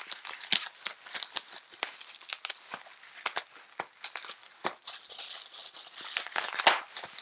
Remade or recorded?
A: recorded